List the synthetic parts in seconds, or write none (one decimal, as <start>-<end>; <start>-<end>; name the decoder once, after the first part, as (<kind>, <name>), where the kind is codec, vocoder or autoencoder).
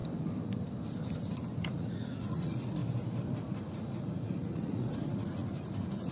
1.6-2.8 (vocoder, Vocos); 3.6-6.1